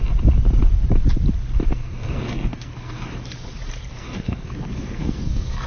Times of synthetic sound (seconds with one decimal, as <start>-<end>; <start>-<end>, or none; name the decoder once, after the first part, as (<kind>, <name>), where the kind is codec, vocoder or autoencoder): 1.7-3.1 (codec, SNAC); 3.9-5.7